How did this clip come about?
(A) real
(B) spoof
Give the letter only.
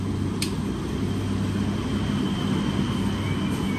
A